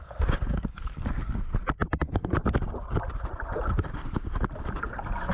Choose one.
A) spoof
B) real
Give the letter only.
B